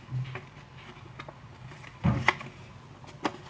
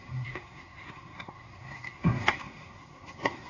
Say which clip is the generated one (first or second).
second